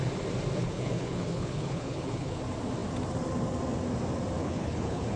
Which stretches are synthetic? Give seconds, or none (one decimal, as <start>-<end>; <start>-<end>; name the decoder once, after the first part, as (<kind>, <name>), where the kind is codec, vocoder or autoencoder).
0.6-2.4 (codec, HILCodec); 4.4-5.2

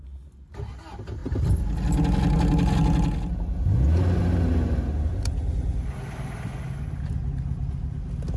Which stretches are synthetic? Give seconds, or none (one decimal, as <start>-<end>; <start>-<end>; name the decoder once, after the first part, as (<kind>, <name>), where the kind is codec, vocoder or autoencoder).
none

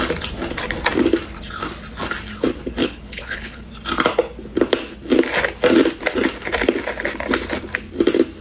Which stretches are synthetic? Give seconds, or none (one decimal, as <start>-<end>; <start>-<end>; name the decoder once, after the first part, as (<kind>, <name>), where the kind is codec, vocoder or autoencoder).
2.8-3.6 (codec, HILCodec)

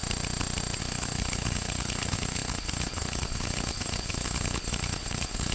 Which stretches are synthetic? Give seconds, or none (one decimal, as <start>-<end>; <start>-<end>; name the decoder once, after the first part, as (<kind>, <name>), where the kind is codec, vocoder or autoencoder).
0.8-5.5 (codec, HILCodec)

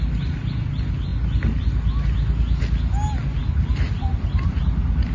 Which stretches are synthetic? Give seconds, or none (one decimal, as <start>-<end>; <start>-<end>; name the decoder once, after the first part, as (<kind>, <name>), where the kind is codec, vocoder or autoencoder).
none